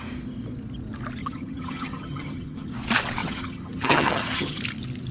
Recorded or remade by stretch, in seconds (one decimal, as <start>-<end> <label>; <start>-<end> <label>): 0.0-1.2 recorded; 1.2-2.7 remade; 2.7-3.2 recorded; 3.2-4.6 remade; 4.6-5.1 recorded